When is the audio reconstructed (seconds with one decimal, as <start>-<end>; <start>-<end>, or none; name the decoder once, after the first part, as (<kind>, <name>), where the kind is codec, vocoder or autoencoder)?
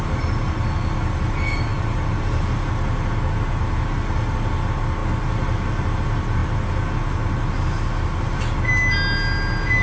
1.7-2.4 (vocoder, BigVGAN v2)